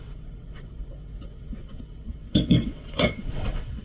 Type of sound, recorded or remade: remade